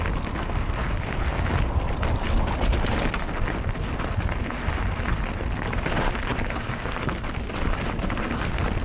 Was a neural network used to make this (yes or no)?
no